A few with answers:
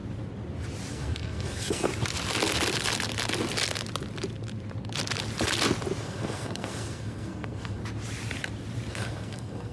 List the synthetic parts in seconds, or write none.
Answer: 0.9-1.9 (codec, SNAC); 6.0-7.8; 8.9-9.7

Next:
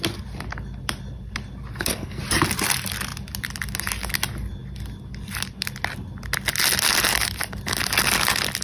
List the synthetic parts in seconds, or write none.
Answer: 1.7-2.2 (codec, SNAC)

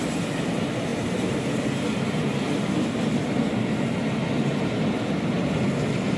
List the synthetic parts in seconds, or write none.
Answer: none

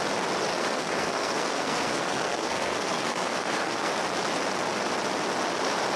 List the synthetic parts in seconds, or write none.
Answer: 0.5-3.9 (codec, SNAC)